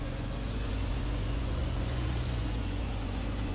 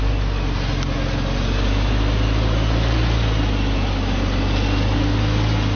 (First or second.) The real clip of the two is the second